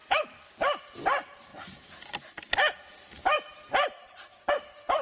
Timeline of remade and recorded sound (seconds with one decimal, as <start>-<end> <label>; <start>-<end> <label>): 0.0-5.0 recorded